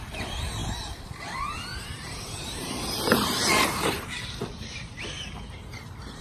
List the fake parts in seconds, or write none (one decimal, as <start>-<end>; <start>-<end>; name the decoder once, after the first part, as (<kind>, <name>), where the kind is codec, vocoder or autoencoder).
1.7-5.4 (vocoder, BigVGAN v2)